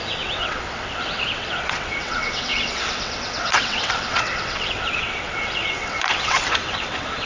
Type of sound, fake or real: fake